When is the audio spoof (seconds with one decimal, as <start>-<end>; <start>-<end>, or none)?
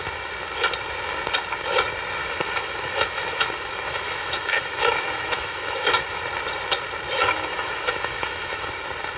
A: 2.2-6.2; 7.2-8.7